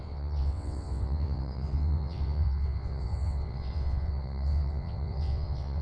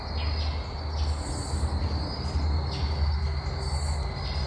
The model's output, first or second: first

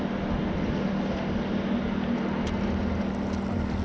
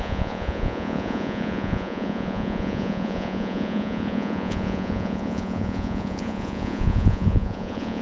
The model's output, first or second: second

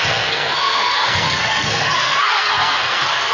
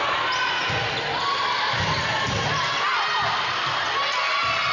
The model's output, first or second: first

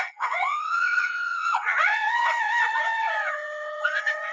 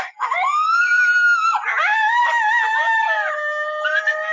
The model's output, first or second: first